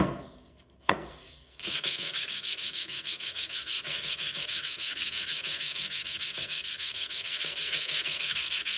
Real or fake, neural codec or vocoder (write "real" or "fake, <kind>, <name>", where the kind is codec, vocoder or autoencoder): fake, codec, SNAC